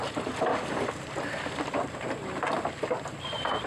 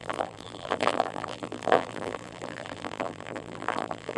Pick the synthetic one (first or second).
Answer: second